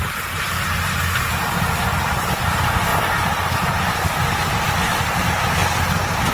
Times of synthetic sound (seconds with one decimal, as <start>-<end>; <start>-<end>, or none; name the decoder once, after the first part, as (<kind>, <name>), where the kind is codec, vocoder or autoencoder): 0.0-2.9 (vocoder, BigVGAN v2); 4.5-5.6